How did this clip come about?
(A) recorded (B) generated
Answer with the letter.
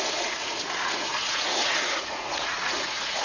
B